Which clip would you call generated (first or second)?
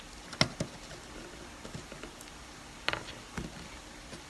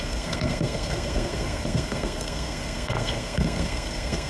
second